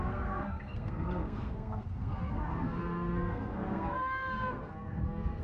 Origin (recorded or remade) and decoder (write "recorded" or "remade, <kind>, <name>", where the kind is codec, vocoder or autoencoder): remade, codec, SNAC